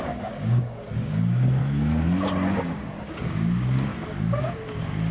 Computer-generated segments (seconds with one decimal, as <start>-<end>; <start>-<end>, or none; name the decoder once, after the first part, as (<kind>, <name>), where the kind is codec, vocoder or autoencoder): 0.0-1.6 (codec, DAC); 2.6-5.1